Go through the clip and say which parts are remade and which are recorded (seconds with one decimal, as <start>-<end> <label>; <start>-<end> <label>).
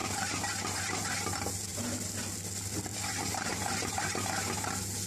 0.0-1.7 recorded; 1.7-2.2 remade; 2.2-2.9 recorded; 2.9-3.5 remade; 3.5-5.1 recorded